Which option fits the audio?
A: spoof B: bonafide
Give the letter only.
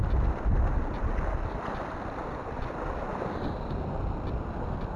B